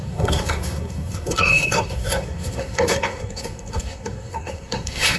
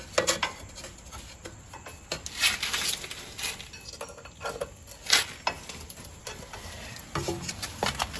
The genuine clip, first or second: second